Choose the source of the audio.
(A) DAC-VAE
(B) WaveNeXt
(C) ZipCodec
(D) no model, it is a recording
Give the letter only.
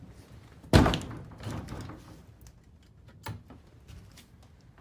D